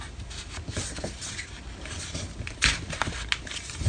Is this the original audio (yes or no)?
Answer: yes